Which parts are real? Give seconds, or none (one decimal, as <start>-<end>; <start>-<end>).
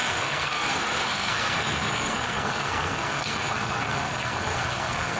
none